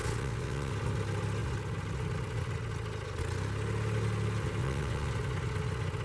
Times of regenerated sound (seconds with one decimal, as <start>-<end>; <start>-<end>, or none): 0.0-0.7; 4.6-5.1